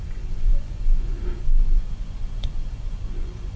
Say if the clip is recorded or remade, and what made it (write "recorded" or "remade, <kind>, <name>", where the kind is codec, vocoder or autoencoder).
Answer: remade, vocoder, Vocos